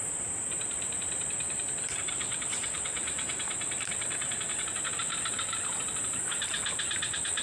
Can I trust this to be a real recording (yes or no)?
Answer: no